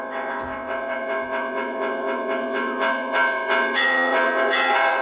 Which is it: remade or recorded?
remade